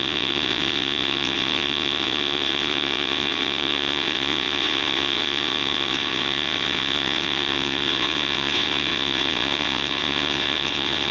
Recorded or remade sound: remade